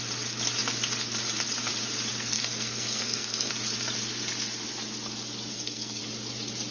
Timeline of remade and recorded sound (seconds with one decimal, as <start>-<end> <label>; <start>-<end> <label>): 0.0-2.1 recorded; 2.1-3.5 remade; 3.5-5.5 recorded; 5.5-6.0 remade; 6.0-6.7 recorded